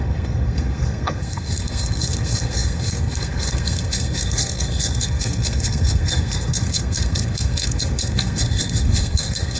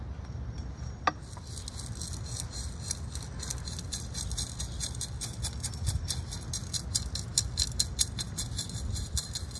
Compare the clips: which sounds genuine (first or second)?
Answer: second